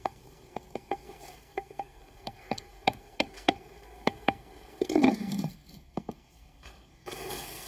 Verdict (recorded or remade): remade